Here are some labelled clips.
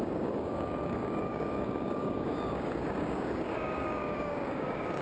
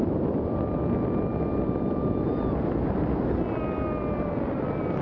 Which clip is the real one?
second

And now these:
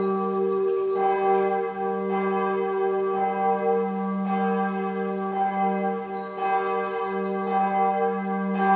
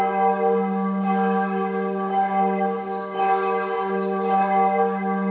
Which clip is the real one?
first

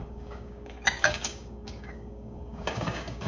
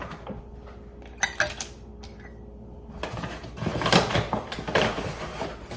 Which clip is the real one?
second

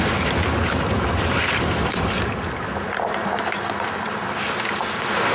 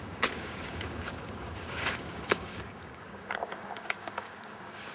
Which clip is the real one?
first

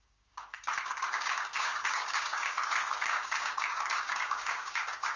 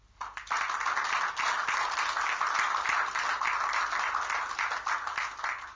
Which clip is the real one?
second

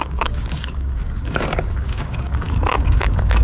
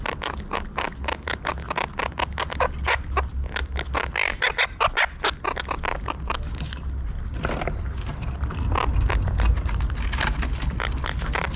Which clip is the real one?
second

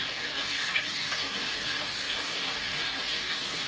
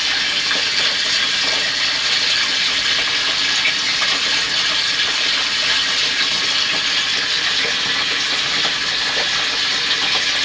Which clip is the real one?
second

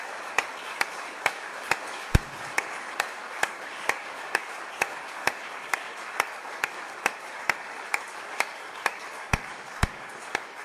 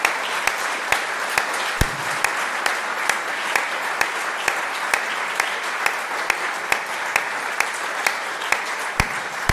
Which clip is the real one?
second